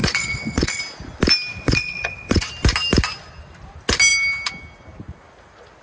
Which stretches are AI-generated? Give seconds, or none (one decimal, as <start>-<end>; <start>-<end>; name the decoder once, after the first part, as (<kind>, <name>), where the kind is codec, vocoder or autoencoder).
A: 0.0-0.8 (vocoder, WaveNeXt); 1.5-2.5